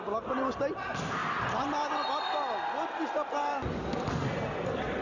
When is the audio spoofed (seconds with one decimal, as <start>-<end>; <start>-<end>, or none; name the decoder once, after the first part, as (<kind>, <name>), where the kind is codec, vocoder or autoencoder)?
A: none